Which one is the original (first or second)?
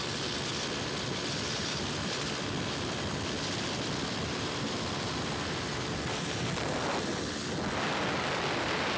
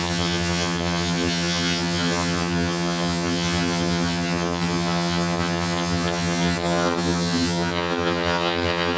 first